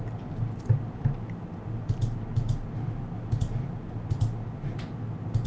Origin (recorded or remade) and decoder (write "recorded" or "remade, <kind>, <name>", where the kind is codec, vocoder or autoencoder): recorded